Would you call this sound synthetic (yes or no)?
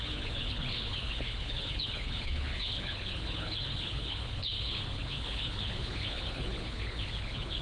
yes